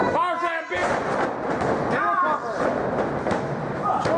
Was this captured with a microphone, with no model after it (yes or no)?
yes